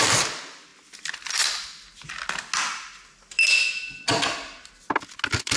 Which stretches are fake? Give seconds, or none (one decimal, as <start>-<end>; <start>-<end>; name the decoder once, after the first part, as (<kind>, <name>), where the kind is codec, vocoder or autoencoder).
none